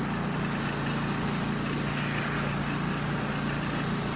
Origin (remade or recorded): recorded